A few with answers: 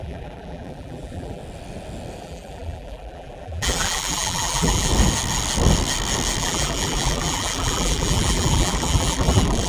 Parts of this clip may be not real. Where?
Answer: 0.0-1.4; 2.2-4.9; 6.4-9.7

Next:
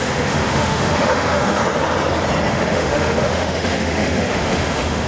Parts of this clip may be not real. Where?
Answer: 0.0-1.6; 2.5-5.1